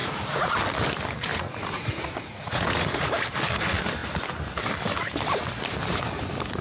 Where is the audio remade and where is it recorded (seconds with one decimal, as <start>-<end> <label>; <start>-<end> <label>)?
0.0-0.6 remade; 0.6-1.3 recorded; 1.3-3.1 remade; 3.1-6.6 recorded